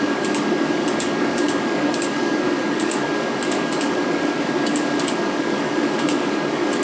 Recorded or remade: remade